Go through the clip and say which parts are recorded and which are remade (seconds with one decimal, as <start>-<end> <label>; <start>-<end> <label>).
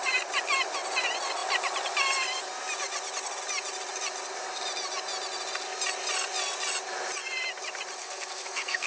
0.0-8.0 recorded; 8.0-8.9 remade